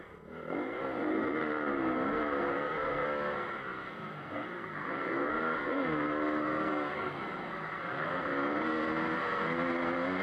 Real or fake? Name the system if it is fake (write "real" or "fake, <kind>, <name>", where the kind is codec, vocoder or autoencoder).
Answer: fake, codec, SNAC